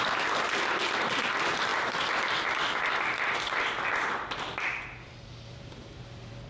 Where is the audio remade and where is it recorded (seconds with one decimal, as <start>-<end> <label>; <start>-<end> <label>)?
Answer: 0.0-6.5 remade